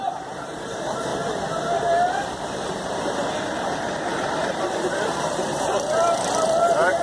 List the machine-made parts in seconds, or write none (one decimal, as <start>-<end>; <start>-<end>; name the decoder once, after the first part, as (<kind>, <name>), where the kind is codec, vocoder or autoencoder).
0.0-1.1 (vocoder, BigVGAN v2); 2.1-7.0